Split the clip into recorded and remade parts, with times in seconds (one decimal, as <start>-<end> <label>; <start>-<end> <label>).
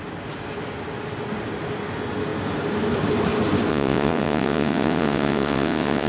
0.0-3.7 recorded; 3.7-6.1 remade